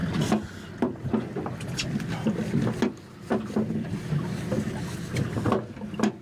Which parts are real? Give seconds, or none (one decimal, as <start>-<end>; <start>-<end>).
0.0-6.2